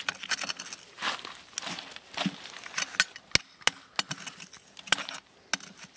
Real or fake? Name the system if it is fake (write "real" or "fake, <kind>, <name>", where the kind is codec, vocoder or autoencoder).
real